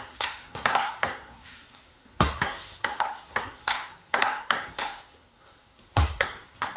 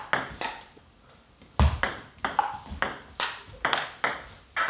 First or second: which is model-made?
first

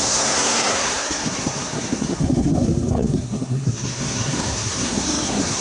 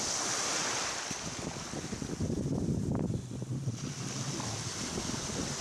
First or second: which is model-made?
first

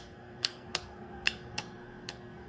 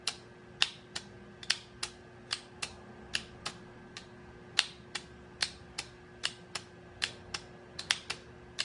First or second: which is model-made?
first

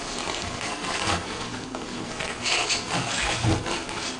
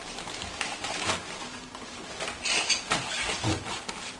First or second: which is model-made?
first